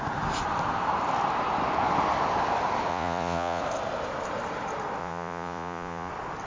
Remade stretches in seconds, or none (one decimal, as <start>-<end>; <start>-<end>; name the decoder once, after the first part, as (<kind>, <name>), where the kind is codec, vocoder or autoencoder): 2.9-3.6 (vocoder, Vocos); 5.0-6.1